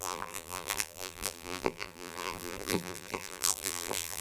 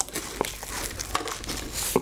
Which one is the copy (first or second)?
first